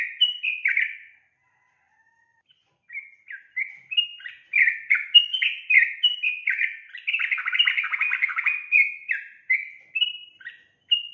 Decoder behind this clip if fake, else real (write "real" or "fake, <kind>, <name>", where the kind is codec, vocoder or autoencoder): real